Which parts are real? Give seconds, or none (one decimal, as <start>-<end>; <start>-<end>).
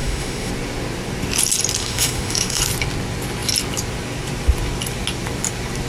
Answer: 0.5-1.8; 2.6-5.9